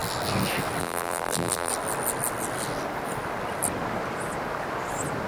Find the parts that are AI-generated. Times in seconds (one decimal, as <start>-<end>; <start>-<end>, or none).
0.8-1.7